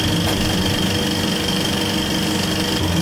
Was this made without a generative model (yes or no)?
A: yes